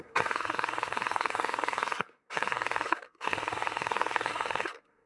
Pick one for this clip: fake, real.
fake